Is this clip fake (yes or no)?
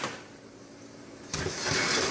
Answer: yes